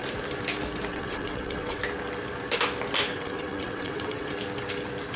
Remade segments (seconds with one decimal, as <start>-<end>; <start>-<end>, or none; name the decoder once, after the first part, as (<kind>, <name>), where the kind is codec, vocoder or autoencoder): 0.9-1.8 (vocoder, WaveNeXt); 3.1-4.3